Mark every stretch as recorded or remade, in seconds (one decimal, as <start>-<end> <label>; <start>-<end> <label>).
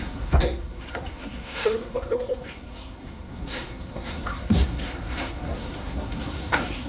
0.0-6.9 remade